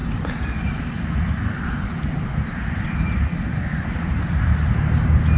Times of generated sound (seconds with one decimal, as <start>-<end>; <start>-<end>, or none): none